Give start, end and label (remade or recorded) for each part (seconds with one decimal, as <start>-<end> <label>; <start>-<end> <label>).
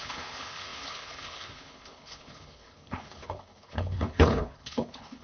0.0-5.2 remade